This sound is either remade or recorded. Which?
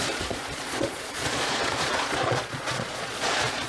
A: remade